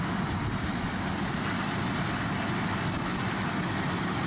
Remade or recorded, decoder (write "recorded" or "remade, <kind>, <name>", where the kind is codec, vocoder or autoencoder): recorded